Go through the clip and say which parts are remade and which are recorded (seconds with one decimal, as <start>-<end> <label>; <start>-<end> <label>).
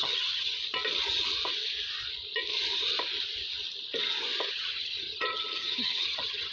0.0-0.6 remade; 0.6-4.5 recorded; 4.5-6.5 remade